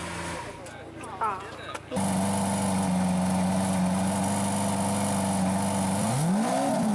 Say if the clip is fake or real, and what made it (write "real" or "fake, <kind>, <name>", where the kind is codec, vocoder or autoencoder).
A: real